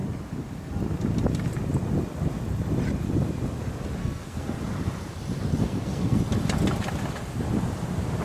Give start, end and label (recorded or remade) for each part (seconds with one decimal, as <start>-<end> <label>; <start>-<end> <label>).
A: 0.0-4.0 recorded; 4.0-4.6 remade; 4.6-5.6 recorded; 5.6-6.2 remade; 6.2-8.2 recorded